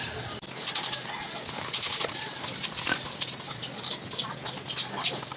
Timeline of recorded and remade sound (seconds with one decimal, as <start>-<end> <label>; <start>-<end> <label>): 0.0-5.4 recorded